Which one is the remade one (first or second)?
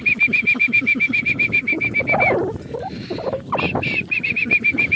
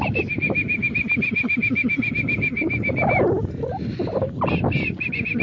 first